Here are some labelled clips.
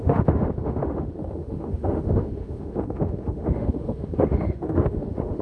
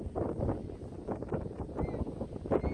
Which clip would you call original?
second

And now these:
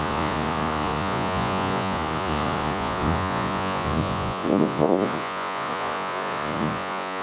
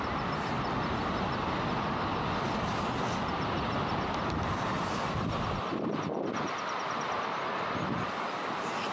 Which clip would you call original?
second